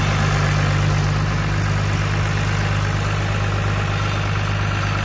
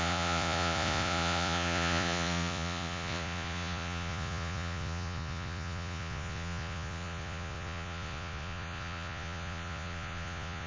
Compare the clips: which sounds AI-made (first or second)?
second